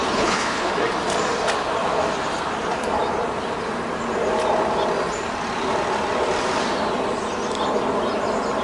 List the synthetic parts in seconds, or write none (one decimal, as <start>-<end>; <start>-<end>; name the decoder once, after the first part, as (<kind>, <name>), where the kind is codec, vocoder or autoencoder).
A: 0.0-0.7 (codec, HILCodec)